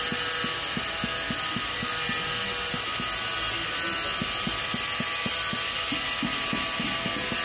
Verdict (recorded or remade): recorded